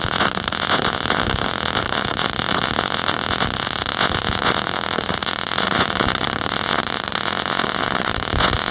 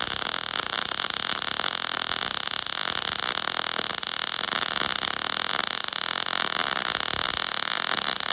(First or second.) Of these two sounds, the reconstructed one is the first